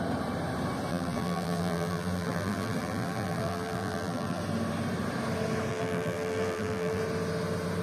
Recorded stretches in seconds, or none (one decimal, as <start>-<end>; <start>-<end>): 0.0-0.9; 4.4-5.7; 7.0-7.8